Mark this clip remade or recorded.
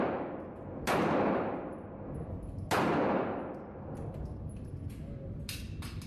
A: recorded